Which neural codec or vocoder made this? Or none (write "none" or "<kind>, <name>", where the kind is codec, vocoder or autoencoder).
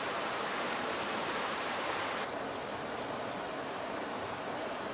vocoder, BigVGAN v2